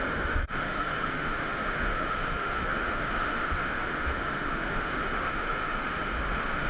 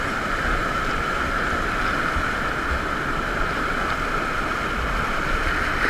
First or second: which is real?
second